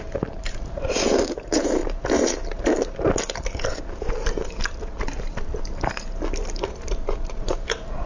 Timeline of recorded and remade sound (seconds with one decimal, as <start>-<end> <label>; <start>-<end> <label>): 0.0-1.8 remade; 1.8-6.6 recorded; 6.6-8.1 remade